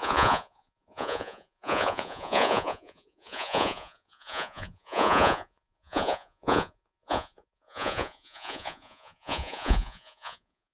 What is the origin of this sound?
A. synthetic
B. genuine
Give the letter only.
A